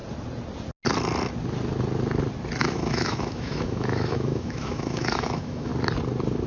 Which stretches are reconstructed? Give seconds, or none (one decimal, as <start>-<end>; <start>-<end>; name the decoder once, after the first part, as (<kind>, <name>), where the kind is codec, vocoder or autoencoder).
2.6-5.7 (autoencoder, DAC-VAE)